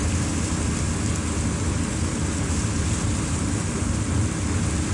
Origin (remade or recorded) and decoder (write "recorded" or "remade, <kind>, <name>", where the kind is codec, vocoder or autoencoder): recorded